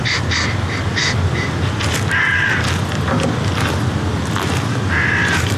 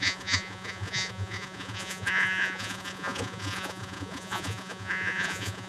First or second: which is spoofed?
second